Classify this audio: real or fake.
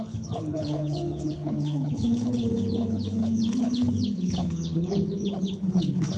fake